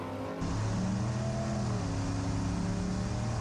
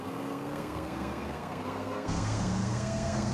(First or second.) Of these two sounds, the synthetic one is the second